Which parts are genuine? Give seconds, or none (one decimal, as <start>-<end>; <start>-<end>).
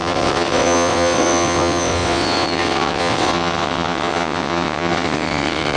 none